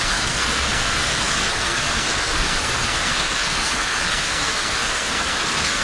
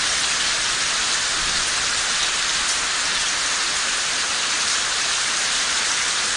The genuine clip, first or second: second